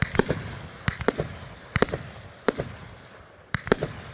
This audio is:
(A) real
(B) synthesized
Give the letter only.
A